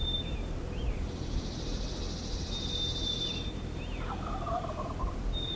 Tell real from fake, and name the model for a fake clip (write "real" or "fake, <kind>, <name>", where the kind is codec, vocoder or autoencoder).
real